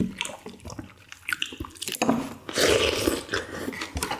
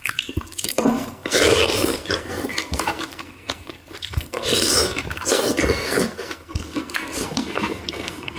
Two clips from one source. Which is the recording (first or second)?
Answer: first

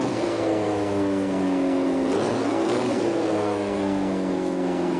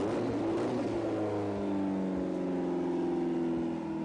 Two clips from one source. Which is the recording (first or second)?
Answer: second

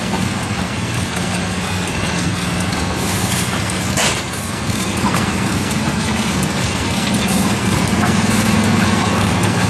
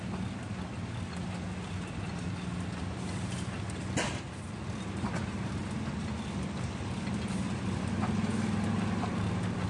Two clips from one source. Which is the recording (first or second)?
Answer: second